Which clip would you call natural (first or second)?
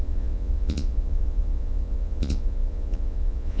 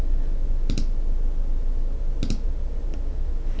second